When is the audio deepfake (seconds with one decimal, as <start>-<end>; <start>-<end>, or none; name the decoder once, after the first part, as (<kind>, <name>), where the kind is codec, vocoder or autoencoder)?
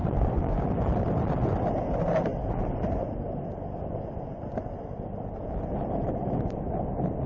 0.0-0.7 (vocoder, Vocos)